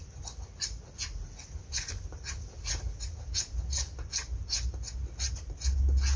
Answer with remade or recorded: recorded